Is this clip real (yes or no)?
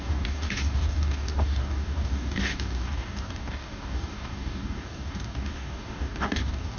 no